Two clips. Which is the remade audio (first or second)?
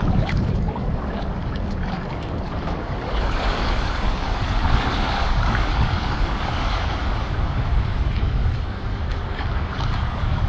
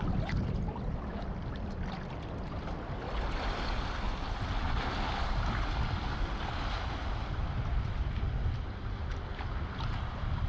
first